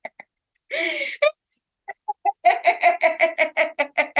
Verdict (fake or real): real